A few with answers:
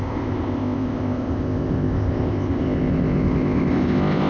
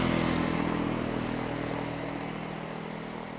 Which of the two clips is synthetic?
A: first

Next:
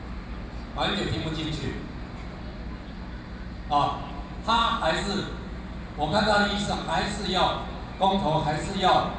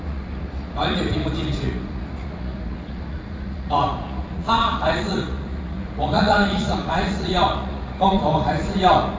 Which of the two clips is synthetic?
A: second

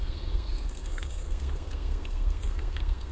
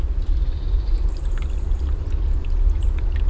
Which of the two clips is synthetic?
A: first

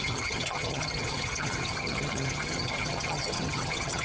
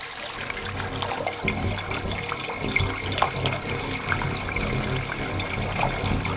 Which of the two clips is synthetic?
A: first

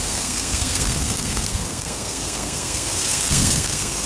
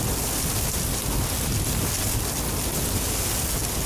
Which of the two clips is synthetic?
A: first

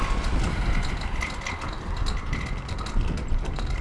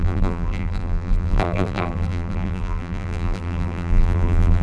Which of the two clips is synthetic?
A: second